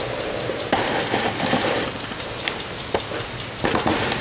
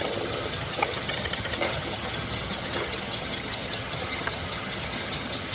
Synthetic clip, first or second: second